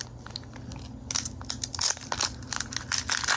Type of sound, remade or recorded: recorded